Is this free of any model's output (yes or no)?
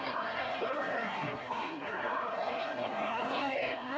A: no